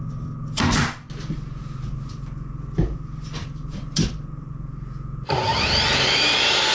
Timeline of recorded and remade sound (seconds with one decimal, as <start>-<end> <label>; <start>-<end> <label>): 0.0-1.6 recorded; 1.6-2.1 remade; 2.1-3.4 recorded; 3.4-4.5 remade; 4.5-5.5 recorded; 5.5-6.7 remade